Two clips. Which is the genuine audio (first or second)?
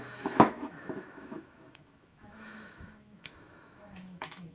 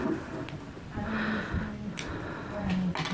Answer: second